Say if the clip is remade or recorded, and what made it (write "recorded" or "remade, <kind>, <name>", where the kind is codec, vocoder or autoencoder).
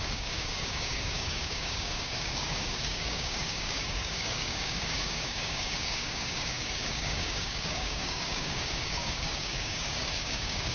remade, codec, DAC